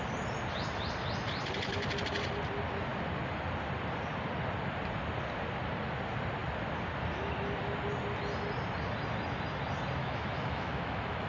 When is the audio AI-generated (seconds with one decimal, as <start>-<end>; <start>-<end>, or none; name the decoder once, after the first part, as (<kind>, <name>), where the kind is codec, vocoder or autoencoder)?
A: 10.0-11.3 (autoencoder, DAC-VAE)